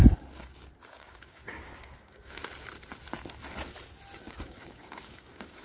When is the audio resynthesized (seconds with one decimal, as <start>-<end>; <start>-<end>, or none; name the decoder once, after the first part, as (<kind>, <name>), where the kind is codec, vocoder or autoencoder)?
0.9-2.4 (codec, DAC); 4.2-5.6